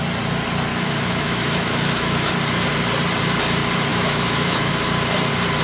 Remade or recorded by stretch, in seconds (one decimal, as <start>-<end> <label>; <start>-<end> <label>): 0.0-0.7 recorded; 0.7-2.3 remade; 2.3-3.9 recorded; 3.9-4.7 remade; 4.7-5.6 recorded

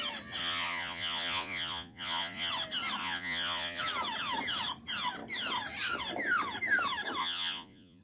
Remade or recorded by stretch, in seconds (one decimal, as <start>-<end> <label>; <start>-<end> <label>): 0.0-0.4 recorded; 0.4-2.5 remade; 2.5-3.0 recorded; 3.0-3.8 remade; 3.8-7.2 recorded; 7.2-8.0 remade